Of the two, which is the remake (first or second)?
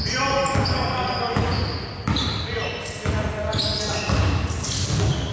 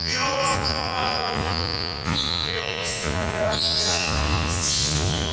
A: second